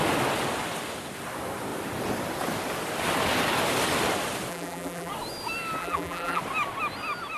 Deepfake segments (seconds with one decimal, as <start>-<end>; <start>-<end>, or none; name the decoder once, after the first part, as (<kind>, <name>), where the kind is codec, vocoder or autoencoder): 4.5-5.1 (vocoder, BigVGAN v2); 5.8-6.4